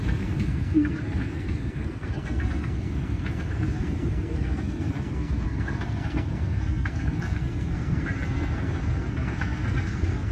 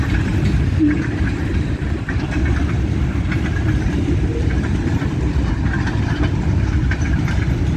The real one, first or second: second